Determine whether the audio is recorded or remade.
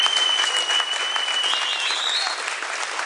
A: recorded